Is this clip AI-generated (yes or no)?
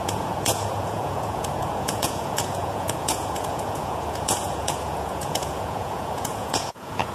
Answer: yes